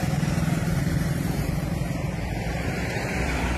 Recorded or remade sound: remade